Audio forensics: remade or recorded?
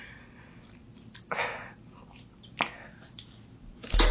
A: recorded